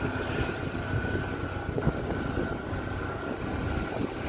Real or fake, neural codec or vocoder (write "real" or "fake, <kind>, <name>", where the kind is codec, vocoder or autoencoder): real